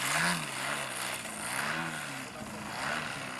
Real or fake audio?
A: real